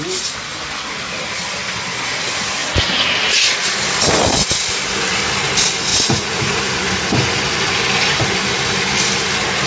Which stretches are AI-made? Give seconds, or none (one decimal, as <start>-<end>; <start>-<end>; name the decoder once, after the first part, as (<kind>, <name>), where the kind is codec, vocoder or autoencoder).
5.9-6.6 (vocoder, Vocos)